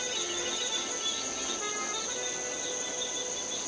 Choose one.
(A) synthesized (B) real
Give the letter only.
B